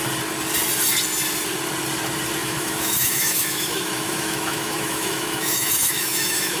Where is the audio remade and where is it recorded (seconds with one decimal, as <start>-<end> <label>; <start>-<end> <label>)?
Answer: 0.0-2.4 recorded; 2.4-6.6 remade